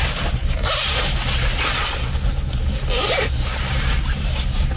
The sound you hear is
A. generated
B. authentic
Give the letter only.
B